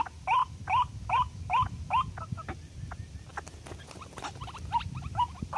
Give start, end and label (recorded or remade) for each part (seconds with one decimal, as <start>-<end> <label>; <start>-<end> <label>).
0.0-5.6 recorded